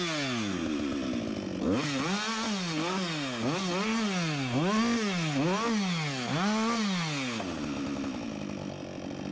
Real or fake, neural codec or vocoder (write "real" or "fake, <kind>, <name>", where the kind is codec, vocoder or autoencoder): real